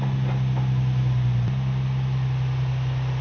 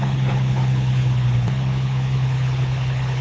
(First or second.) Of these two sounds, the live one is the first